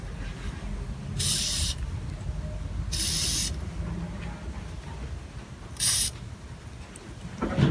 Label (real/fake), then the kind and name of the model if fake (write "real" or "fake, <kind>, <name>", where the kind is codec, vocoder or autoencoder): real